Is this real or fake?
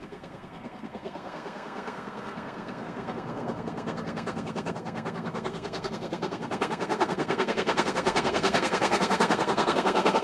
fake